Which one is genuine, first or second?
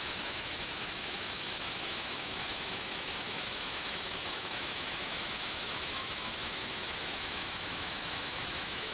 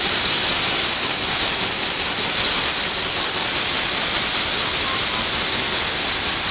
second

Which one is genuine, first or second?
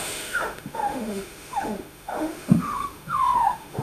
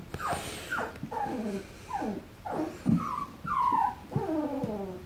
second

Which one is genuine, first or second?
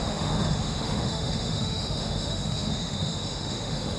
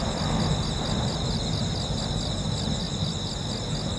second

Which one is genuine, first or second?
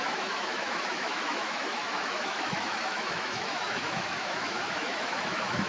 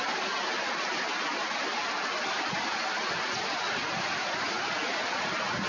second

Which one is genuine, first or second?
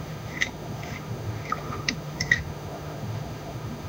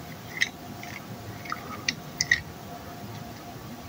second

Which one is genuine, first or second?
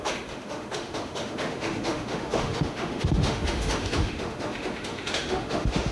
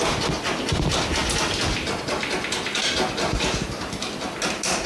second